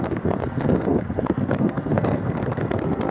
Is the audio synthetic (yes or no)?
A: yes